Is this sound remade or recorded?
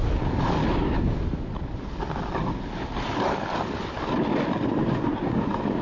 recorded